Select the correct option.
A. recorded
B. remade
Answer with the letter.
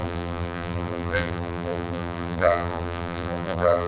B